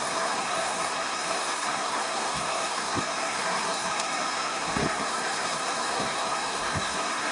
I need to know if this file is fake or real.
fake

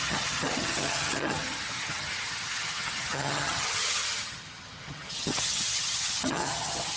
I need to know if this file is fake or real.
fake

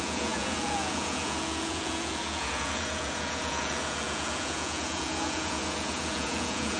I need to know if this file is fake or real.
fake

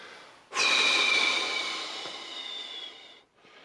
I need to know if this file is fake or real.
real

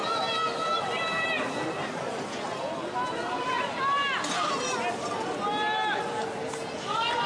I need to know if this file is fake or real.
real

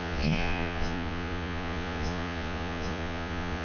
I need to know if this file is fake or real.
fake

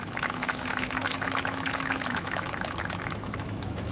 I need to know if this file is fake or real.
fake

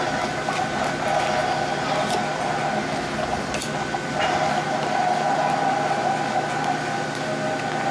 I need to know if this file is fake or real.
real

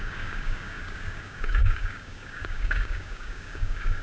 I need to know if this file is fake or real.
fake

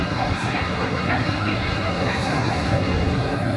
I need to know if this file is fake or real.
fake